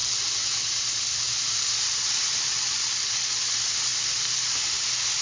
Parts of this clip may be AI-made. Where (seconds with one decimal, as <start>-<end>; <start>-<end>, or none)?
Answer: none